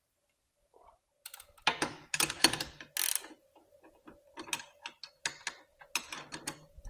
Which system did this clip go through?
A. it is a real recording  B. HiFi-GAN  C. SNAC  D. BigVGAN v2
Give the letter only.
A